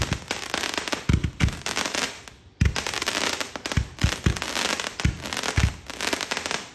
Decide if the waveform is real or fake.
real